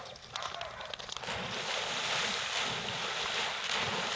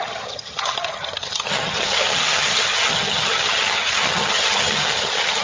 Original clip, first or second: first